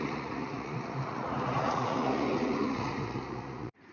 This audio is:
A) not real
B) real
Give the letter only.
A